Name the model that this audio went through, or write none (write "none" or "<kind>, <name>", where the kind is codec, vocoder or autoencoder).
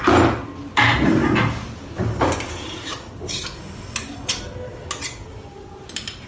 none